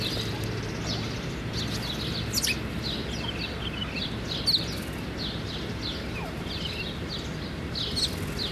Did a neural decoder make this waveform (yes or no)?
no